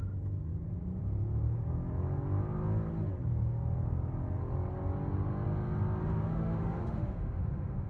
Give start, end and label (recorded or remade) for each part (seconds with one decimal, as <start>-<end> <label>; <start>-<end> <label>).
0.0-6.0 recorded; 6.0-7.9 remade